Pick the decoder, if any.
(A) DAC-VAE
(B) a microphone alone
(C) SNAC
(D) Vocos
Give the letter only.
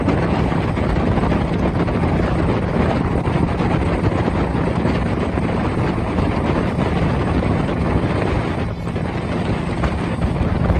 B